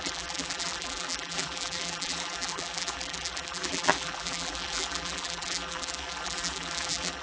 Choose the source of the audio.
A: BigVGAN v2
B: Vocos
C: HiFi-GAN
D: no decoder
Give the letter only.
A